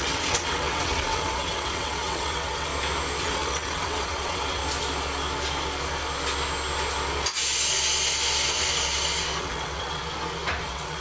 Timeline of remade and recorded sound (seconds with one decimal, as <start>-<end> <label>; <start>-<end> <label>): 0.0-2.7 remade; 2.7-3.2 recorded; 3.2-4.6 remade; 4.6-9.4 recorded; 9.4-10.0 remade; 10.0-10.6 recorded; 10.6-11.0 remade